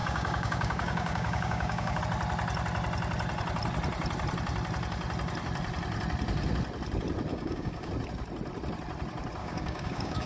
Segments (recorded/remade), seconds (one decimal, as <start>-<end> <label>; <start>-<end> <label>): 0.0-2.0 remade; 2.0-7.3 recorded; 7.3-7.9 remade; 7.9-9.4 recorded; 9.4-10.3 remade

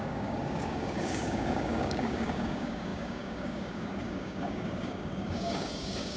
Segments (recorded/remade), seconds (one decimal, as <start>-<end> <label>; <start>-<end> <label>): 0.0-6.2 remade

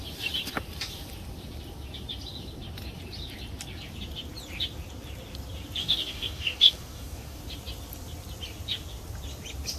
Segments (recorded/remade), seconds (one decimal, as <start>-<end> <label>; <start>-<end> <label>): 0.0-5.8 recorded; 5.8-7.4 remade; 7.4-9.8 recorded

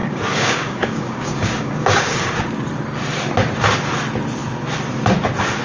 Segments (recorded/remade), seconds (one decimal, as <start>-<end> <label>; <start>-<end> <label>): 0.0-2.4 remade; 2.4-5.6 recorded

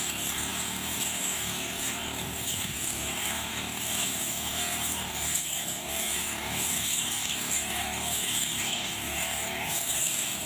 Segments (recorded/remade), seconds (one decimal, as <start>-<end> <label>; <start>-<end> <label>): 0.0-10.5 remade

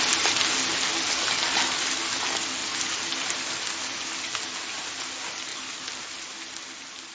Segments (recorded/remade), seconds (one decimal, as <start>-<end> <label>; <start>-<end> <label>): 0.0-7.1 recorded